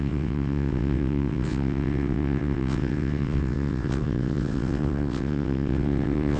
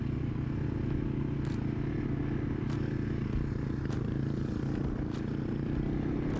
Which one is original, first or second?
second